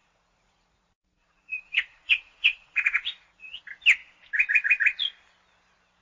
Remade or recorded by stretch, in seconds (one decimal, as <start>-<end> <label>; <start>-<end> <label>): 0.0-3.6 remade; 3.6-6.0 recorded